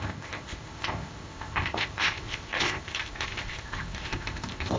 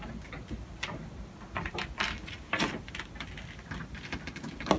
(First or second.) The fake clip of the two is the first